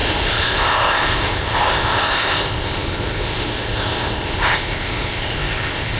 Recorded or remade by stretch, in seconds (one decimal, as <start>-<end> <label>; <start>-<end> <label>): 0.0-6.0 remade